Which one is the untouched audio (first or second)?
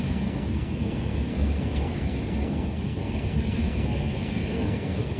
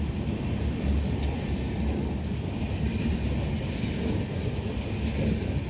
second